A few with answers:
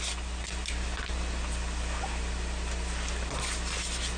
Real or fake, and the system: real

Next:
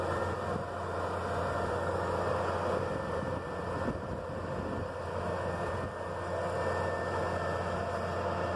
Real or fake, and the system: real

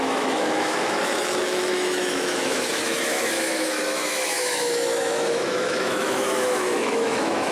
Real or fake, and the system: fake, autoencoder, DAC-VAE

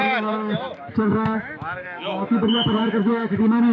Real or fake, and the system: fake, autoencoder, DAC-VAE